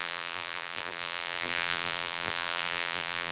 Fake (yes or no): yes